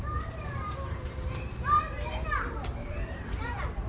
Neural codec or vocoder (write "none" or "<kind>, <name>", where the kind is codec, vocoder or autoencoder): vocoder, BigVGAN v2